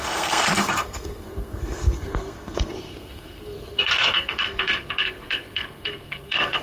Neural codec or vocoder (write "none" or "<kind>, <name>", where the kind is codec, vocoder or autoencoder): codec, SNAC